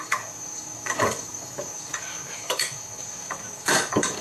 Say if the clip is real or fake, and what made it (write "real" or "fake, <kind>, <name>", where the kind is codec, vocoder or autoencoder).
fake, codec, DAC